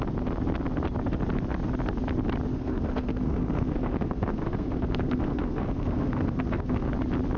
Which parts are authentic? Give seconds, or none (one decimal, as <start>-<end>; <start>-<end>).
0.0-2.5; 6.9-7.4